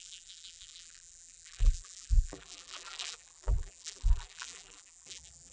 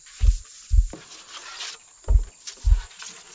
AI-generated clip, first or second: first